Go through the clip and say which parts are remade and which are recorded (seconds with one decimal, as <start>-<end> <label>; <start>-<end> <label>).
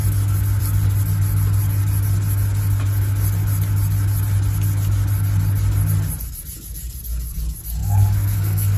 0.0-7.8 recorded; 7.8-8.8 remade